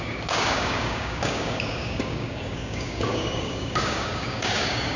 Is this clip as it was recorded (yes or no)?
no